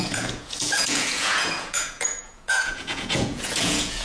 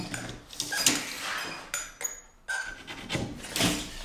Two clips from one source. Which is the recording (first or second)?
second